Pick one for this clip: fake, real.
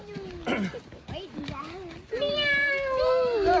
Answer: real